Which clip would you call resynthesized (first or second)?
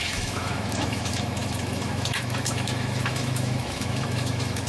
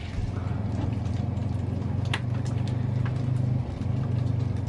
first